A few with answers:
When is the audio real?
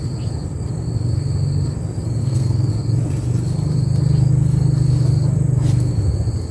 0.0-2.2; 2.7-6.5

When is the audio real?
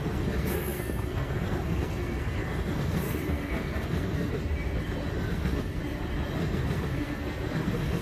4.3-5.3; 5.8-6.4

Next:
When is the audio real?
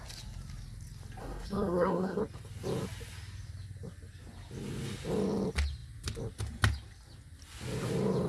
0.0-1.2; 2.2-8.3